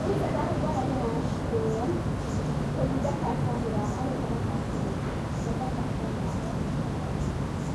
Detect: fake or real real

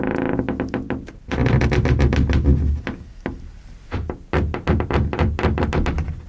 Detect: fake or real real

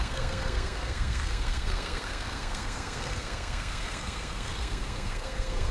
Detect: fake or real fake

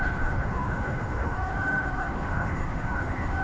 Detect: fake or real fake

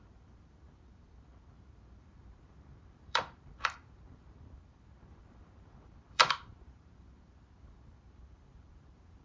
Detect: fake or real fake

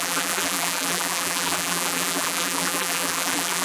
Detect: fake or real fake